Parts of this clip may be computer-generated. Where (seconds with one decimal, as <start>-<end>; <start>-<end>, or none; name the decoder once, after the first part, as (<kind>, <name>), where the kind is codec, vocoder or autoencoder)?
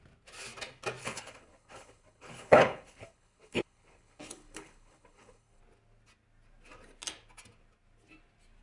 1.0-5.6 (codec, HILCodec)